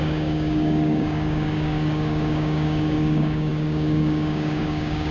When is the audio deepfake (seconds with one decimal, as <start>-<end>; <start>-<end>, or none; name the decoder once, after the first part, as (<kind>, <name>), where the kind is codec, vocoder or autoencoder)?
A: 0.0-5.1 (codec, DAC)